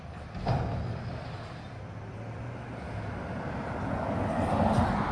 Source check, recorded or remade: recorded